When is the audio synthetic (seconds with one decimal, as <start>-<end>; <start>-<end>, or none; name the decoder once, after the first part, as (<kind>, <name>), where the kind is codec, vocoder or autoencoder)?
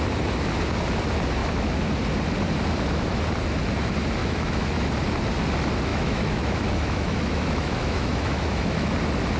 1.4-1.9 (autoencoder, DAC-VAE); 4.2-4.9; 5.9-8.9